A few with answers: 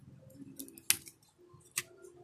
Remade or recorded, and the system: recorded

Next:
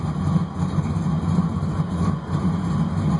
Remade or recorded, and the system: recorded